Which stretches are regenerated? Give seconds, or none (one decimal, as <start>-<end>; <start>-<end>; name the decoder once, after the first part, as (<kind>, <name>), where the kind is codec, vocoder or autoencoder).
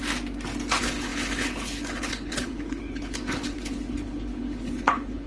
0.7-5.3 (codec, HILCodec)